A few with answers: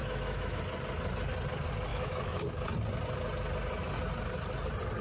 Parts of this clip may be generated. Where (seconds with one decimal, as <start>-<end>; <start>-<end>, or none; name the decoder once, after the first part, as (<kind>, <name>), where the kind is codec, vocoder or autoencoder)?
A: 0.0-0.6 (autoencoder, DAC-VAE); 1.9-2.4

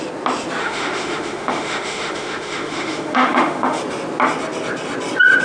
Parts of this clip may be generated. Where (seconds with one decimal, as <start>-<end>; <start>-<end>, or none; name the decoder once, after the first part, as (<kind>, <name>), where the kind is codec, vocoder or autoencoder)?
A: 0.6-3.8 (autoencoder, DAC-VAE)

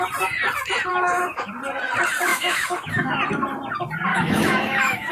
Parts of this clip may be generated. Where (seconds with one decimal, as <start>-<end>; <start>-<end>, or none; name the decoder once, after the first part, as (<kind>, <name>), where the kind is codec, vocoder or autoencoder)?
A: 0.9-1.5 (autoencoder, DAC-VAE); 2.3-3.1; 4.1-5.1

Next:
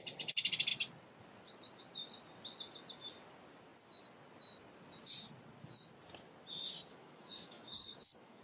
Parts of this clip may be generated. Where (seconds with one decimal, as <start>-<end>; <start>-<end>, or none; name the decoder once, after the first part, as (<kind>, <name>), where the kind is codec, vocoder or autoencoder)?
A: 6.9-8.4 (autoencoder, DAC-VAE)